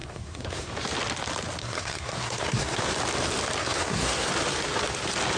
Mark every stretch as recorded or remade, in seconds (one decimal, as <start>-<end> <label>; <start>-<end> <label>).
0.0-0.7 remade; 0.7-1.6 recorded; 1.6-2.8 remade; 2.8-3.6 recorded; 3.6-4.3 remade; 4.3-5.4 recorded